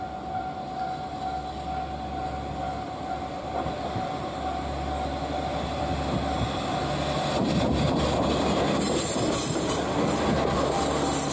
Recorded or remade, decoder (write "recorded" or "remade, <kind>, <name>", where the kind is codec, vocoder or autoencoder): recorded